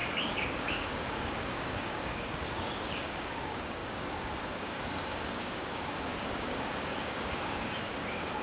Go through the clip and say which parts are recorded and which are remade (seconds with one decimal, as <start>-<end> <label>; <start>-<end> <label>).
0.0-8.4 remade